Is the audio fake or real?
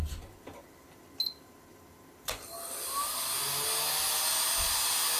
real